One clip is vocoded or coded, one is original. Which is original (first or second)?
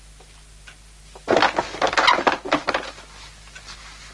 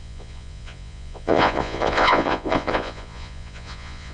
first